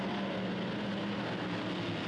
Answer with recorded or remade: recorded